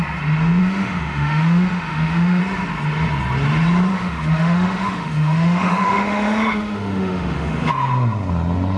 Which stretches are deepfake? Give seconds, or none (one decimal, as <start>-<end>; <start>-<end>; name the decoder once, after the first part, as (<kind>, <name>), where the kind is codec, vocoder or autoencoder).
0.6-2.4 (autoencoder, DAC-VAE); 3.9-7.7